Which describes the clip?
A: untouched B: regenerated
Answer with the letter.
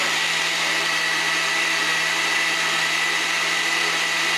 A